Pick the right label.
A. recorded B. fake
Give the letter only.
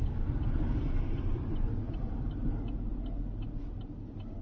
A